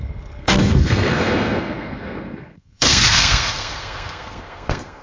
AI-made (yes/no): yes